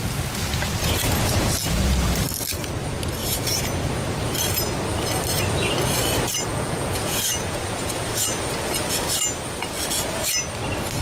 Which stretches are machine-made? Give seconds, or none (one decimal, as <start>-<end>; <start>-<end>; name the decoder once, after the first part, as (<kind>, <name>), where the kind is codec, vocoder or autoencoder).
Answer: 3.2-3.9 (vocoder, Vocos); 6.5-8.4